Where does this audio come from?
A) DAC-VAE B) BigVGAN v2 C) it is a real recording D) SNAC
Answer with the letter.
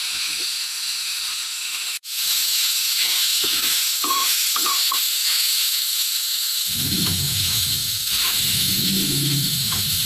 A